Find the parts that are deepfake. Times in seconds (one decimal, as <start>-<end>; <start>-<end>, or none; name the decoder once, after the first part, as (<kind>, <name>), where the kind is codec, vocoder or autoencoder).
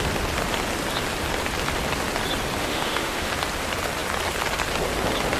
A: 2.6-3.3 (autoencoder, DAC-VAE)